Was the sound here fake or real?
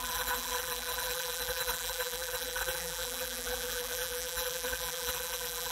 fake